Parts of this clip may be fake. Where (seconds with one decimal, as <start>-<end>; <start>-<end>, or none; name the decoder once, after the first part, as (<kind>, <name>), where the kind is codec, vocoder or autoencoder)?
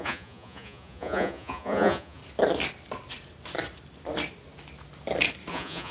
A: 0.0-2.2 (vocoder, Vocos); 5.5-5.9